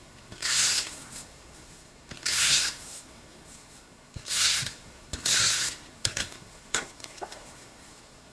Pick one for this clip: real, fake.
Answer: fake